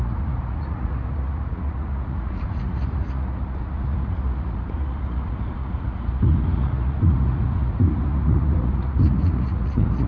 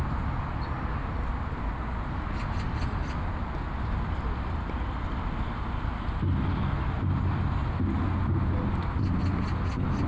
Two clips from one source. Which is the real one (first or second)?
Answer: second